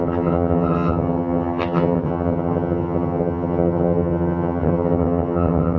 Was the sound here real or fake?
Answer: fake